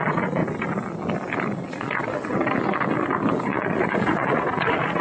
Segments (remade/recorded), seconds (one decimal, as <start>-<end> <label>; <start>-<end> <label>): 0.0-0.4 remade; 0.4-3.4 recorded; 3.4-5.0 remade